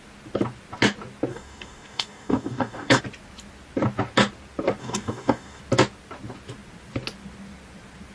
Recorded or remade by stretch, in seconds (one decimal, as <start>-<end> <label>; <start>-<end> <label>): 0.0-1.3 recorded; 1.3-3.0 remade; 3.0-4.8 recorded; 4.8-5.6 remade; 5.6-8.1 recorded